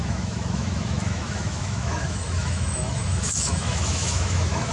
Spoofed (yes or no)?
yes